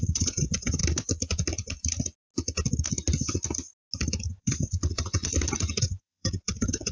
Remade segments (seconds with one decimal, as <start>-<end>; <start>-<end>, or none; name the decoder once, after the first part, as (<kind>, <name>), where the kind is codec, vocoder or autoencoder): 0.0-0.8 (vocoder, WaveNeXt); 4.3-5.2; 5.8-6.9